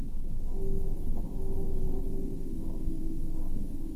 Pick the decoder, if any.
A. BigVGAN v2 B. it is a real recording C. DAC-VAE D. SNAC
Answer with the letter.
D